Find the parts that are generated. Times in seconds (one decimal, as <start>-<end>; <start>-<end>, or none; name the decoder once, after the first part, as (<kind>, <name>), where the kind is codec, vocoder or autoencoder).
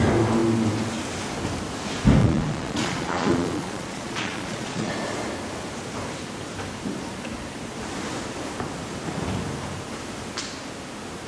2.2-4.9 (vocoder, Vocos)